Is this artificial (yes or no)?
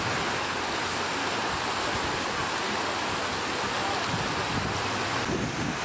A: no